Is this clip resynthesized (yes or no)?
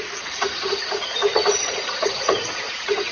yes